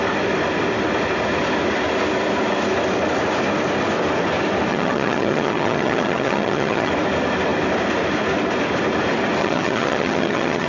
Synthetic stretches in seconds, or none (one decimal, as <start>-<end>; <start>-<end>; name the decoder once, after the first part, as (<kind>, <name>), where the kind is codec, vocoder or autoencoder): 4.7-6.9 (vocoder, HiFi-GAN); 9.4-10.7